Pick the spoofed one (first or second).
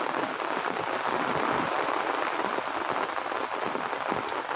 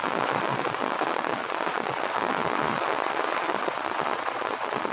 second